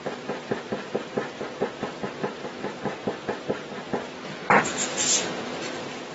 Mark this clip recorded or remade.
recorded